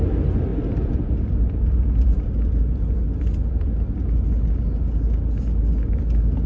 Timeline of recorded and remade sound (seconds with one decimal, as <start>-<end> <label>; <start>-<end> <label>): 0.0-0.5 recorded; 0.5-4.0 remade; 4.0-6.5 recorded